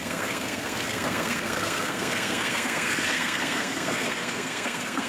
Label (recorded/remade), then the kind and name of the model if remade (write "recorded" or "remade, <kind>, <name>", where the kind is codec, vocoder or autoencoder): remade, codec, SNAC